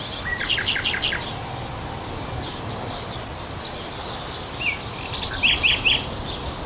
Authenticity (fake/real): real